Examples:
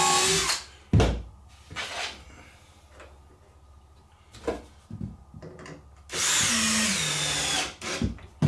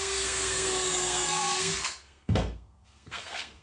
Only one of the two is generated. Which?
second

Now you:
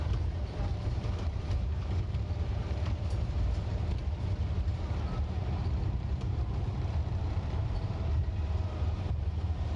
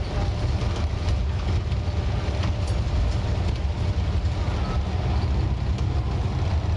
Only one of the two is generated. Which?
first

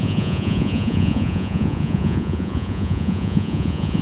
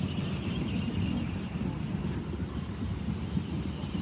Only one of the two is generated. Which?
first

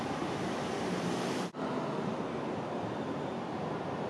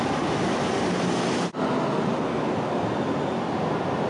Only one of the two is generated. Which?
first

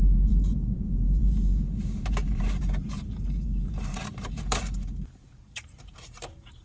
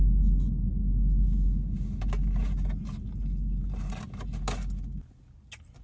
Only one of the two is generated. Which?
first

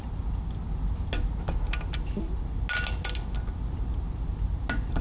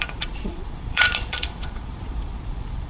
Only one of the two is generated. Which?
second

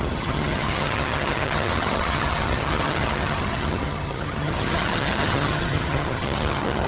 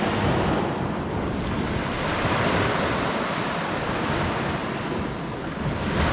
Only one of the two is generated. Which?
first